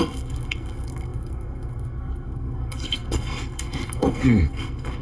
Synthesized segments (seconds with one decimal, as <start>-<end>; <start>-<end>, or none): 0.0-5.0